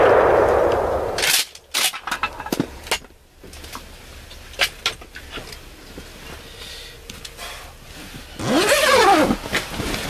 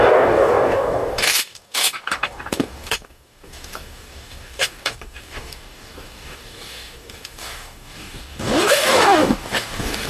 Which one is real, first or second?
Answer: first